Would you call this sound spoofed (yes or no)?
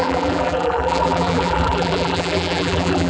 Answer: yes